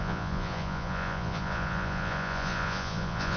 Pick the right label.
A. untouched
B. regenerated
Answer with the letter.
B